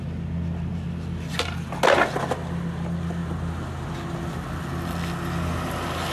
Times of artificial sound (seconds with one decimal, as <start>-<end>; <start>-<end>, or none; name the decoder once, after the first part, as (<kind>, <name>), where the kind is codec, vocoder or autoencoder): none